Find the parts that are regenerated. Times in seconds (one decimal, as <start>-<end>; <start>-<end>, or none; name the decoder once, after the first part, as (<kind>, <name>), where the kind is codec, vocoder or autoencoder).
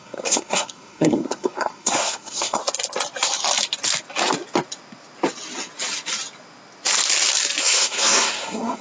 0.0-2.6 (codec, SNAC); 7.6-8.8